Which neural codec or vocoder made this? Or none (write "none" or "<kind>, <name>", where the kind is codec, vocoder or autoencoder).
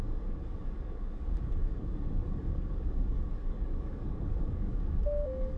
codec, DAC